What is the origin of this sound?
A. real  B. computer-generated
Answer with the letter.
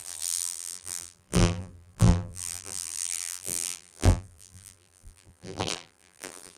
B